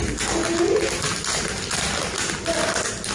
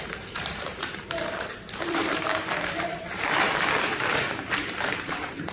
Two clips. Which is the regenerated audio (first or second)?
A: second